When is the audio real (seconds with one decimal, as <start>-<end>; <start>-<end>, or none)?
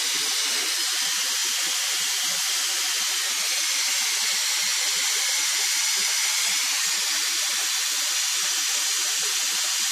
0.0-9.9